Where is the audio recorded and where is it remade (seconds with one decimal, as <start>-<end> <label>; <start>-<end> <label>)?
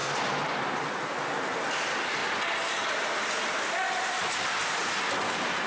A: 0.0-0.5 recorded; 0.5-2.2 remade; 2.2-5.7 recorded